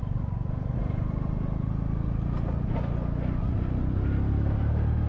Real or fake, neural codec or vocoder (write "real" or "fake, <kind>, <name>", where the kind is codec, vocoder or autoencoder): real